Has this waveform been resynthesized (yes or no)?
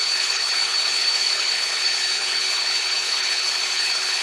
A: yes